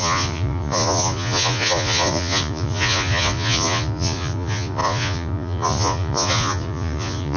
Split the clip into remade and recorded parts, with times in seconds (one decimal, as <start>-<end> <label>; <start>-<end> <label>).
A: 0.0-7.4 remade